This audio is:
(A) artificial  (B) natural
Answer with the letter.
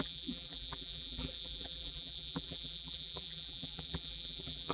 A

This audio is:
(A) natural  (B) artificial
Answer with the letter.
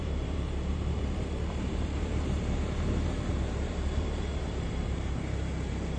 B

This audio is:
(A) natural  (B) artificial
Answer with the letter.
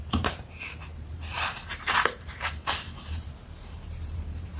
B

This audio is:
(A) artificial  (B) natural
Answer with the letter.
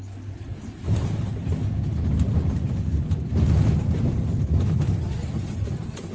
B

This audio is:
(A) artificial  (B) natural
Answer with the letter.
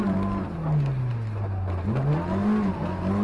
B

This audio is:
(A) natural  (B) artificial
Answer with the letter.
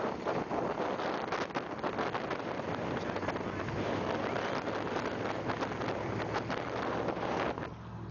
A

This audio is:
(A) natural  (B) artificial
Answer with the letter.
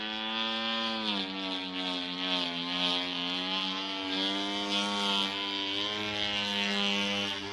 A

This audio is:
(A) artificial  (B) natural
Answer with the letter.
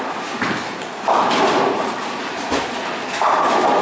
B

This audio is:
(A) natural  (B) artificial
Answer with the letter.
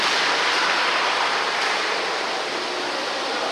A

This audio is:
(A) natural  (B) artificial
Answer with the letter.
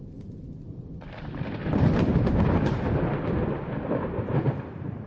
B